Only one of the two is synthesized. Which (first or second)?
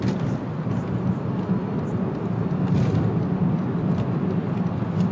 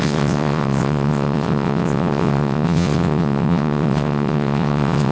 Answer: second